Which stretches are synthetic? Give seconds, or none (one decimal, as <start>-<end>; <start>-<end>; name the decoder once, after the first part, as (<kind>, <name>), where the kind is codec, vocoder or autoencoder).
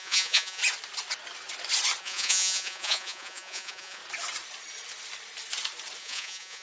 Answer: 0.0-0.6 (vocoder, Vocos); 2.0-4.0; 6.0-6.6